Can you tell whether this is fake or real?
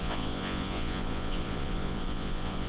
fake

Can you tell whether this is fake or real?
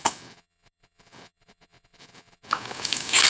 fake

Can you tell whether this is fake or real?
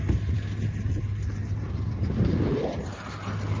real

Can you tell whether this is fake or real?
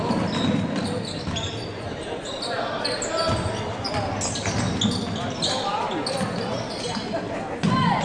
real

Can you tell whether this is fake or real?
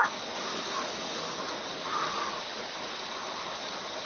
real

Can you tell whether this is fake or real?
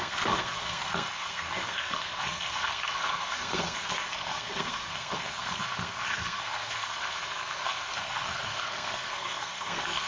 fake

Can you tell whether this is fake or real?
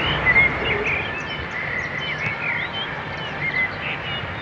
real